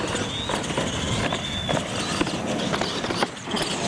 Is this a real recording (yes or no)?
yes